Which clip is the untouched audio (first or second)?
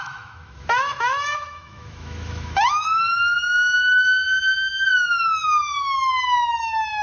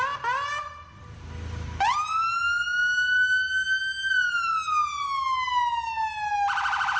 second